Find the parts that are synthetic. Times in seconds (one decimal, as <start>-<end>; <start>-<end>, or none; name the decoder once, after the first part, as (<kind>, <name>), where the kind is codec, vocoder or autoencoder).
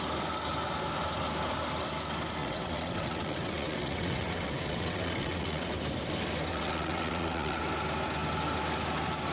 2.4-5.7 (vocoder, WaveNeXt); 6.5-7.6